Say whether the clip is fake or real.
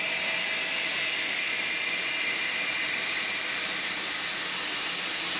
real